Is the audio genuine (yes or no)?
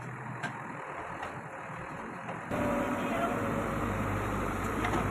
no